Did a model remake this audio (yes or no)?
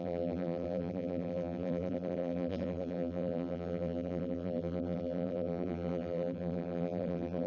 yes